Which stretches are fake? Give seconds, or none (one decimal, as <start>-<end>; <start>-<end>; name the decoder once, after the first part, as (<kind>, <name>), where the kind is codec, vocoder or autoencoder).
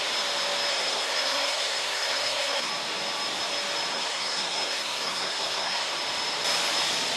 0.7-2.7 (codec, SNAC); 3.9-5.9